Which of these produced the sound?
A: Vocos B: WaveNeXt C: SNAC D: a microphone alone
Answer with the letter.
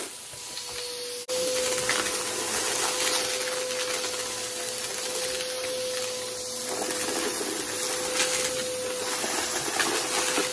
D